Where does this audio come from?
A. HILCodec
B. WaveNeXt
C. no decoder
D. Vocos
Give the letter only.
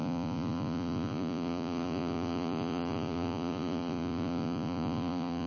D